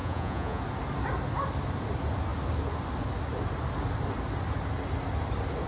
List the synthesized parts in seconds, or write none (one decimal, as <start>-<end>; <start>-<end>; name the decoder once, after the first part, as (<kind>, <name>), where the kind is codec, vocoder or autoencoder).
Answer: 0.0-0.6 (vocoder, Vocos)